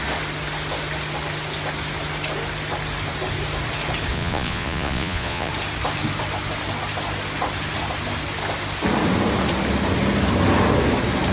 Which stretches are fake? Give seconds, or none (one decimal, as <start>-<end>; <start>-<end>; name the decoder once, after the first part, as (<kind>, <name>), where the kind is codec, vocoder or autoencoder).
4.1-5.5 (vocoder, Vocos)